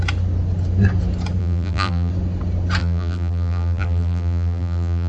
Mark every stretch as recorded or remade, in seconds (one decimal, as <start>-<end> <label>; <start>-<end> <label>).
0.0-1.4 recorded; 1.4-2.1 remade; 2.1-2.8 recorded; 2.8-5.1 remade